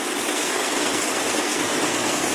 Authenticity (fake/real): fake